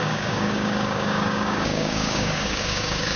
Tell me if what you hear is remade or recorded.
remade